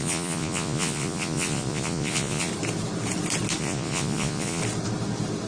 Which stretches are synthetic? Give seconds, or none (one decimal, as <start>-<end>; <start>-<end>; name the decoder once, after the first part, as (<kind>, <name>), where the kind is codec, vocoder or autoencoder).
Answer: 0.0-2.5 (vocoder, Vocos); 3.6-4.6